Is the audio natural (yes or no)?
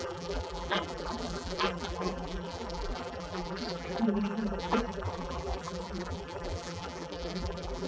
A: no